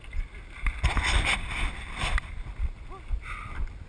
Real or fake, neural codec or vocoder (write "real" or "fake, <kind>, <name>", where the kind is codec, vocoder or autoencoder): real